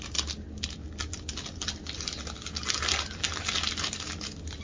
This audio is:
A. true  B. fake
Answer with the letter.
A